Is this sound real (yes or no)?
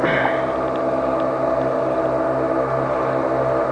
yes